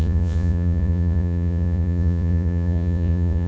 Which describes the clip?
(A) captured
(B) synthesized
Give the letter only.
B